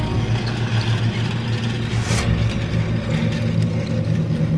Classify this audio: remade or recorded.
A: recorded